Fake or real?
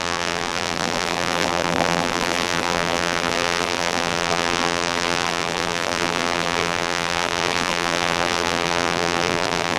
fake